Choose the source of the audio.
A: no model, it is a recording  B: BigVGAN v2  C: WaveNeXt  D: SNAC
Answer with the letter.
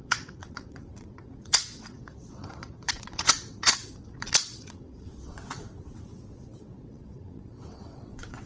C